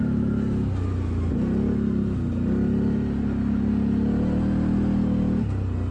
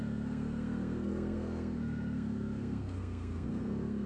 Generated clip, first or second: second